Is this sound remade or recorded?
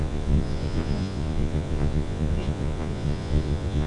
remade